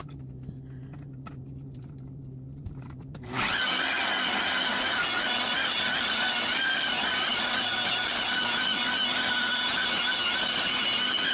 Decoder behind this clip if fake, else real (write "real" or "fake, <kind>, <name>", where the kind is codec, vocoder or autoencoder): real